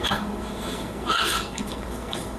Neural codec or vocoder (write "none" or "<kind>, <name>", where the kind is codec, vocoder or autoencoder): codec, SNAC